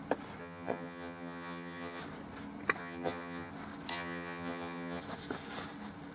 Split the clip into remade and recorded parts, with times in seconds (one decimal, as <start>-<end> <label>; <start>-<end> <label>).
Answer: 0.0-0.4 recorded; 0.4-2.0 remade; 2.0-2.8 recorded; 2.8-3.5 remade; 3.5-3.9 recorded; 3.9-5.0 remade; 5.0-6.1 recorded